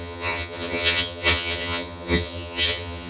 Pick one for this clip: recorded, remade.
remade